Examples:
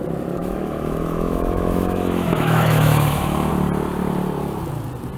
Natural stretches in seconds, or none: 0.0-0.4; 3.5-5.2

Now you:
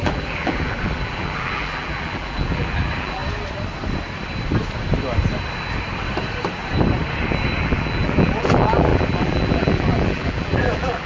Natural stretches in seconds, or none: 3.2-7.6

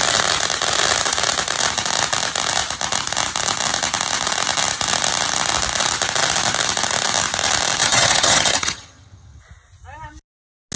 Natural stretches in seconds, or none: 0.0-7.8; 9.4-10.8

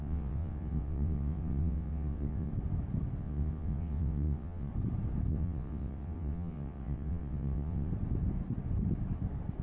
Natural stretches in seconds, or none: 2.5-3.2; 4.7-5.3; 7.9-9.6

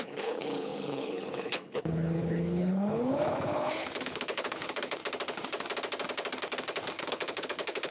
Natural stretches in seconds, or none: 5.0-7.0